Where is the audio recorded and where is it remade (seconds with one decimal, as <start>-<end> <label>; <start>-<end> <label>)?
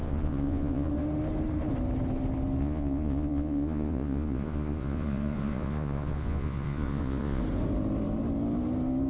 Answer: 0.0-0.9 remade; 0.9-2.6 recorded; 2.6-7.4 remade; 7.4-9.1 recorded